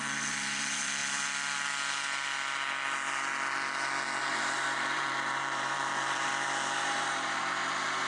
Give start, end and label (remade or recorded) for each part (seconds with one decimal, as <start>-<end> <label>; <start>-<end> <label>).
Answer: 0.0-1.0 remade; 1.0-4.2 recorded; 4.2-6.3 remade; 6.3-6.9 recorded; 6.9-8.1 remade